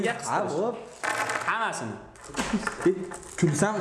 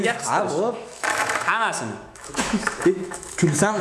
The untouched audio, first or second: first